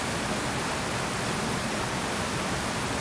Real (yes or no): yes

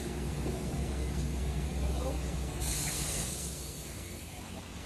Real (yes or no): no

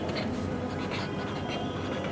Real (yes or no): yes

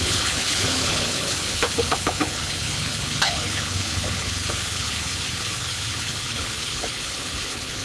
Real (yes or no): no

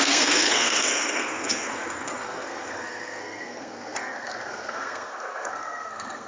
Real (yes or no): no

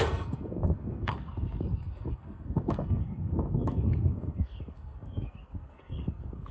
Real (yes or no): no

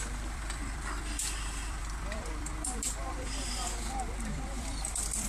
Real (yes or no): no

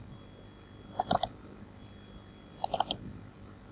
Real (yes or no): yes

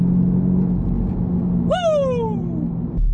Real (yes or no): yes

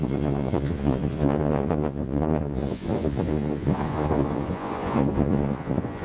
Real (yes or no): no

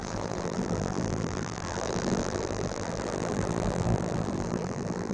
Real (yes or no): no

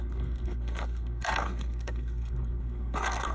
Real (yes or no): no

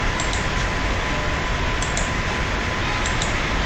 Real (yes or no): yes